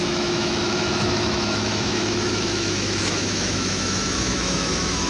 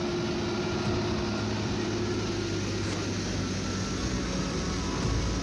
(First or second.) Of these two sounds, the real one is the second